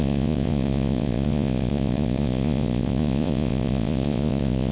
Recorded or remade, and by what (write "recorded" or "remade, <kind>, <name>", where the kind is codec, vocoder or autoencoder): remade, vocoder, Vocos